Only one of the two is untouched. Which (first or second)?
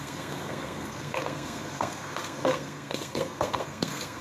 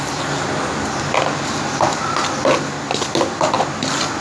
second